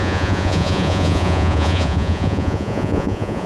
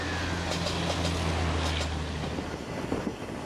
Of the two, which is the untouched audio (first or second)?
second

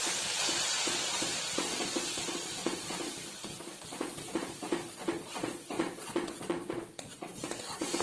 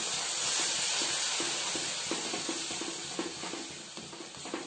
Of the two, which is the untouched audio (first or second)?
second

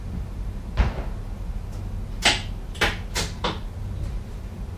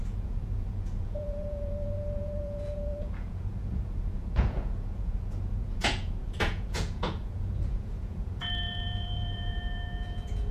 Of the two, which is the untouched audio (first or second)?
first